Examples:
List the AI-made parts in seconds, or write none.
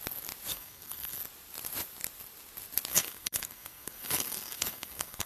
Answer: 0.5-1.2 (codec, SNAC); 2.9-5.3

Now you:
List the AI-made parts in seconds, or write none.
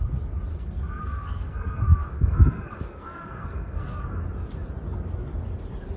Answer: 0.5-4.1 (codec, SNAC)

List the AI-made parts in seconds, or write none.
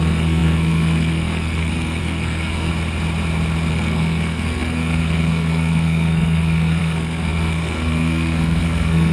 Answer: 0.0-2.7 (codec, SNAC); 3.7-9.1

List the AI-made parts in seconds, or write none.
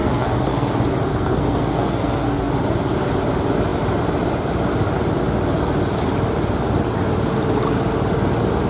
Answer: 0.0-0.7 (codec, SNAC); 1.1-2.5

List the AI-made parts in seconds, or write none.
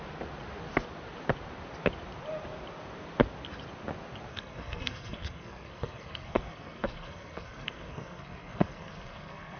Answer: 4.3-9.6 (codec, SNAC)